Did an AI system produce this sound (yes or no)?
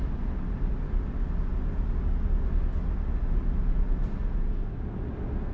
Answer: no